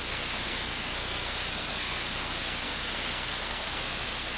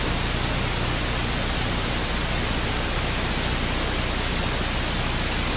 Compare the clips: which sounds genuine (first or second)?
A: second